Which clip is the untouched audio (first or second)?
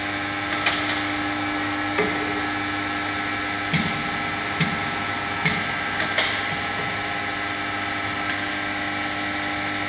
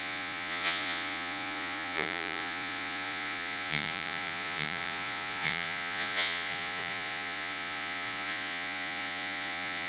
first